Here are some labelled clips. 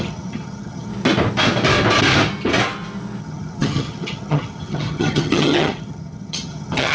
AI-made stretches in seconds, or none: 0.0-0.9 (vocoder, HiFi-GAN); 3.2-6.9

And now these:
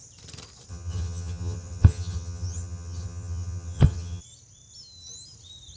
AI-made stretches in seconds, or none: 0.7-4.2 (vocoder, HiFi-GAN)

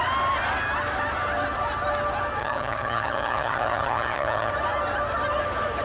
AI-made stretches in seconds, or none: 2.4-4.5 (vocoder, HiFi-GAN)

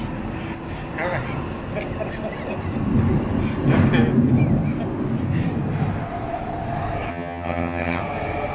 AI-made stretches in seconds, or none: 7.1-8.0 (vocoder, HiFi-GAN)

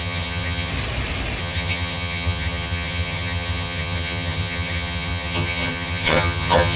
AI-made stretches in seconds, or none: 0.0-0.7 (vocoder, HiFi-GAN); 1.4-6.8

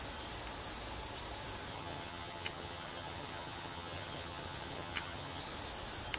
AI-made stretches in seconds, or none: 1.7-5.4 (vocoder, HiFi-GAN)